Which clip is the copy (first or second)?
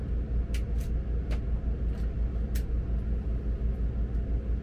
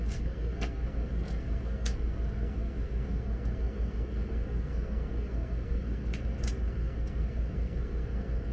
second